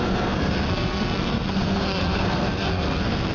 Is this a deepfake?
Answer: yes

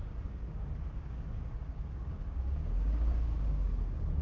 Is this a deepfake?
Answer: yes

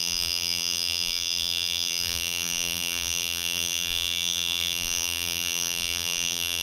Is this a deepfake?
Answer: yes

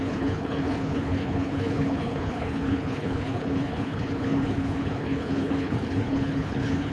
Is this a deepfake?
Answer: yes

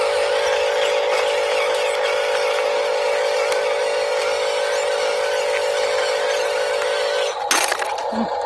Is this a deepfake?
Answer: no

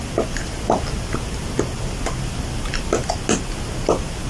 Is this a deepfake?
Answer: no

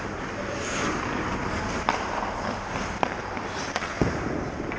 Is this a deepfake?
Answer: no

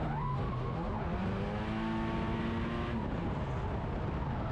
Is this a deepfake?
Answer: no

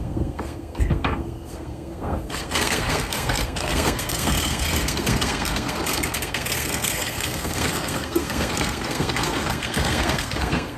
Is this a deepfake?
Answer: yes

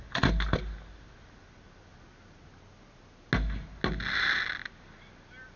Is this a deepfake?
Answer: no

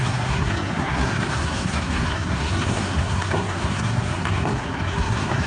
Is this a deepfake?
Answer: yes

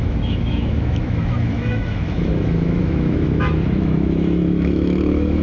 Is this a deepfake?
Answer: yes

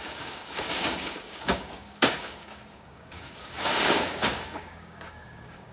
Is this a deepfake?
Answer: yes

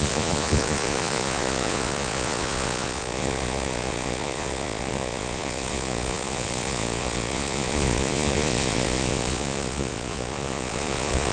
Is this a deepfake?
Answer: yes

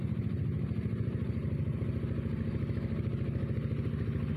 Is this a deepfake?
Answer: no